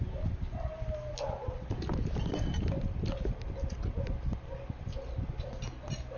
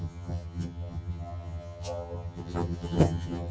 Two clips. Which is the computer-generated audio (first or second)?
second